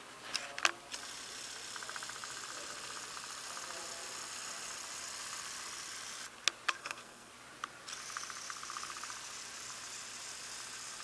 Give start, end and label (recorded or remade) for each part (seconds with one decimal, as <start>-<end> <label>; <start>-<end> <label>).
0.0-6.8 recorded; 6.8-7.3 remade; 7.3-11.0 recorded